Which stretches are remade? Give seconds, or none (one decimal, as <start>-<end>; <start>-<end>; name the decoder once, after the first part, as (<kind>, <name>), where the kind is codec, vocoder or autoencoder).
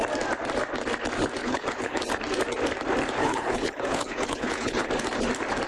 1.4-2.0 (codec, HILCodec); 3.2-4.9